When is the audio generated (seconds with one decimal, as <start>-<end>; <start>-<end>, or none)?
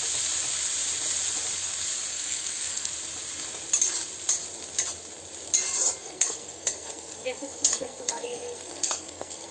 2.1-2.9; 6.0-9.5